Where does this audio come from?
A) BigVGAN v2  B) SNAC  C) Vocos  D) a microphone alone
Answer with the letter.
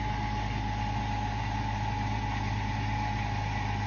D